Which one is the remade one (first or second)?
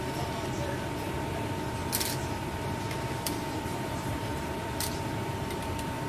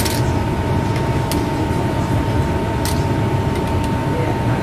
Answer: first